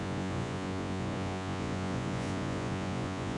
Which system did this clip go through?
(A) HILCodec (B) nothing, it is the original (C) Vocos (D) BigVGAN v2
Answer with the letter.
C